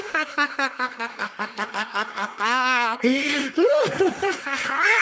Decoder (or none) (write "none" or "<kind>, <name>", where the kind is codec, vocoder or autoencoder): codec, SNAC